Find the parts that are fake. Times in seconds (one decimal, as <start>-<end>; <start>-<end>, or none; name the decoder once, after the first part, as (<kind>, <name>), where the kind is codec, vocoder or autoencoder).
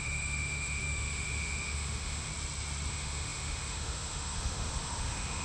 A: 0.0-2.3 (autoencoder, DAC-VAE); 2.9-5.4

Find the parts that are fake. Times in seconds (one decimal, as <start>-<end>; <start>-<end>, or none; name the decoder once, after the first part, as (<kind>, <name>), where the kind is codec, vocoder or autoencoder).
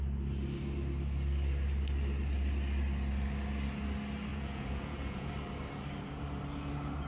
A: 4.3-5.3 (vocoder, Vocos)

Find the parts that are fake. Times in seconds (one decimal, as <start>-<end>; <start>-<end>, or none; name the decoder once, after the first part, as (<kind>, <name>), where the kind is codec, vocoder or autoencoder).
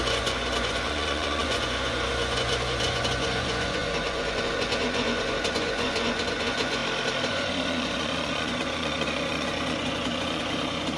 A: 0.0-6.8 (vocoder, Vocos); 7.3-11.0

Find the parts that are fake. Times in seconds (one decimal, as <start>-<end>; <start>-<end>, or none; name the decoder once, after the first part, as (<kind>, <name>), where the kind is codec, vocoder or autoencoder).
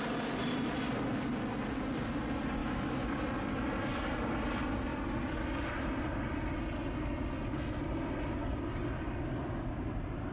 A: 2.6-3.2 (autoencoder, DAC-VAE)